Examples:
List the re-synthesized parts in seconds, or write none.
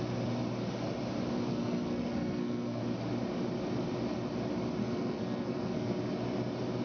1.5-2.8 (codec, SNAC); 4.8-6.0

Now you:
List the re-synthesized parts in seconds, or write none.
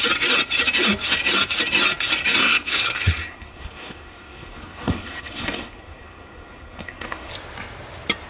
2.4-7.3 (codec, SNAC)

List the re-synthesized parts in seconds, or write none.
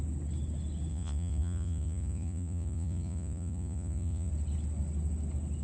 0.9-4.3 (vocoder, Vocos)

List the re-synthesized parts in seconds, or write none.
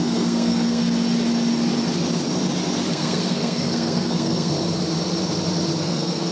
0.0-0.8 (codec, SNAC); 2.9-4.5; 5.8-6.3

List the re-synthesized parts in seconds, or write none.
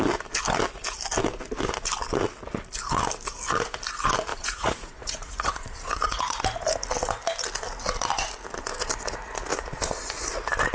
4.3-6.4 (vocoder, Vocos); 9.5-10.0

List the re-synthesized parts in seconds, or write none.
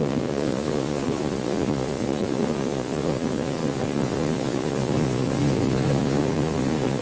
0.0-7.0 (vocoder, Vocos)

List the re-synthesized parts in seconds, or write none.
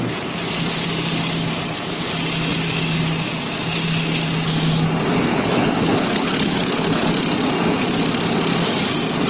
5.3-7.1 (codec, HILCodec)